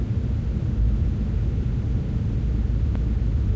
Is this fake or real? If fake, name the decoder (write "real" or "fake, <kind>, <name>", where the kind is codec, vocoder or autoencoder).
real